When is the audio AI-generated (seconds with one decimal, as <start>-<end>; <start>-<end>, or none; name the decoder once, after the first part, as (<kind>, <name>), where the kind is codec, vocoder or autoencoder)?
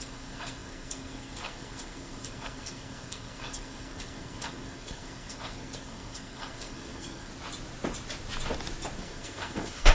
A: 0.0-7.3 (codec, SNAC); 9.0-9.9